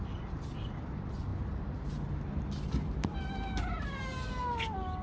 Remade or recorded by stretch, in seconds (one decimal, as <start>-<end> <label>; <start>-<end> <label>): 0.0-5.0 recorded